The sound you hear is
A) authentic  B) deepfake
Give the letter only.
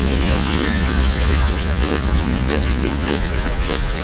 B